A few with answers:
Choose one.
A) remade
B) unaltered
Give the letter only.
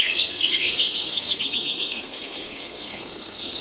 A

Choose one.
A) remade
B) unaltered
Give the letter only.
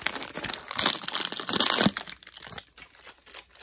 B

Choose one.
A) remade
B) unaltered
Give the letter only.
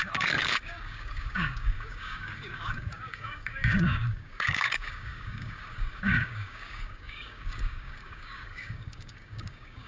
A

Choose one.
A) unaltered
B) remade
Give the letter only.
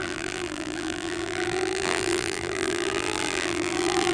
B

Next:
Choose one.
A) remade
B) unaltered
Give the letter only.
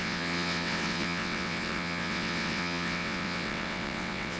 A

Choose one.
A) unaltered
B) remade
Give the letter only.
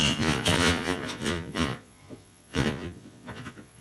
B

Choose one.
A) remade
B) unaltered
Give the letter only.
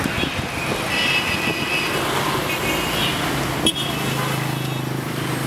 B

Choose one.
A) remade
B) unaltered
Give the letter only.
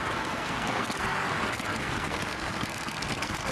A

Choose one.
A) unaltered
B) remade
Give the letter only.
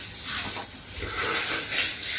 A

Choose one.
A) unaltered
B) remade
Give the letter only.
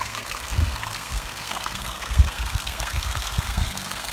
B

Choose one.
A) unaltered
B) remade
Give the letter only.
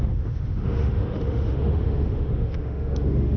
B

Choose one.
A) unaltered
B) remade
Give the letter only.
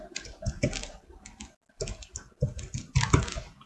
A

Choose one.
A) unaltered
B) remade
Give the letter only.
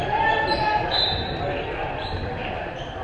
A